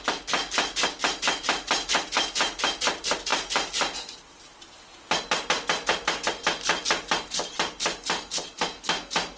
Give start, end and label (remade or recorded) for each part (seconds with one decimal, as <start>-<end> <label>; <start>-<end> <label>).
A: 0.0-9.4 recorded